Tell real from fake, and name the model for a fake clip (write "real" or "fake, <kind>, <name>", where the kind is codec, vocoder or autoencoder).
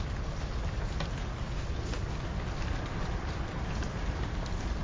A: real